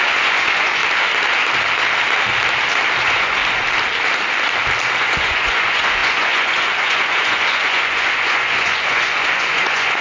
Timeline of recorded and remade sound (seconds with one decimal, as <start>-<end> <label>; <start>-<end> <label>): 0.0-0.8 remade; 0.8-3.0 recorded; 3.0-3.4 remade; 3.4-5.0 recorded; 5.0-10.0 remade